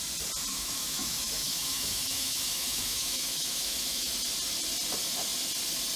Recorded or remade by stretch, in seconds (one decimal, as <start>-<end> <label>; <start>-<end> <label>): 0.0-0.5 recorded; 0.5-4.1 remade; 4.1-6.0 recorded